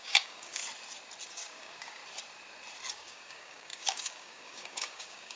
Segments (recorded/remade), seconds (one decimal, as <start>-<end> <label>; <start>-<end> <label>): 0.0-0.6 remade; 0.6-1.3 recorded; 1.3-2.0 remade; 2.0-2.9 recorded; 2.9-5.4 remade